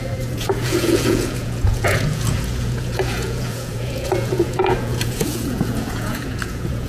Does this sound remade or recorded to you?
remade